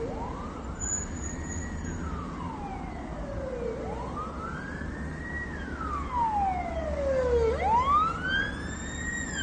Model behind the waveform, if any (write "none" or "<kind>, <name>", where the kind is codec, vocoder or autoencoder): none